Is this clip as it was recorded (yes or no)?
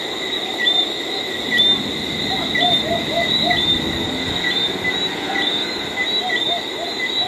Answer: yes